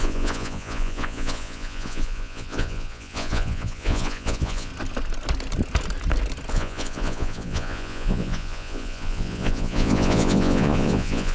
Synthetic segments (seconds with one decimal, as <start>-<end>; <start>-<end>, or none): 0.0-4.7; 6.5-11.3